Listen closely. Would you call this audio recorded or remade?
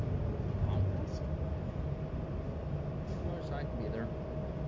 recorded